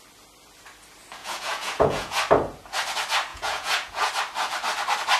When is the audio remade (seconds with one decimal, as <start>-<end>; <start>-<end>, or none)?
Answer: 1.2-2.2; 3.3-4.1